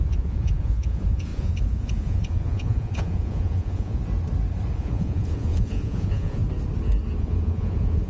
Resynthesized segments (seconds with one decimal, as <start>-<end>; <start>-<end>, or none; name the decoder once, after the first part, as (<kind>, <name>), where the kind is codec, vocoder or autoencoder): 0.0-4.0 (vocoder, Vocos); 4.7-6.4; 7.2-8.1